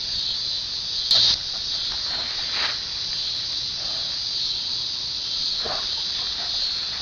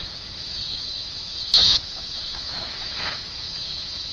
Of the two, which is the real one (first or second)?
first